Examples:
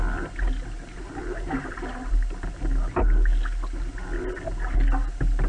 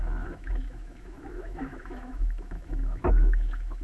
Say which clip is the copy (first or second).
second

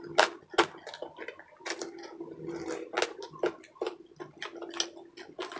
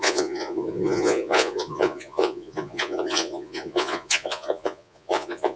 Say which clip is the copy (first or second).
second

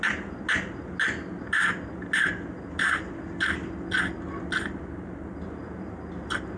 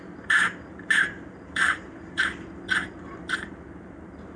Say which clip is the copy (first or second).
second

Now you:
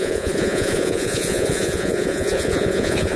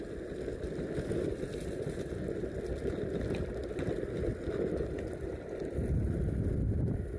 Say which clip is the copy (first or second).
first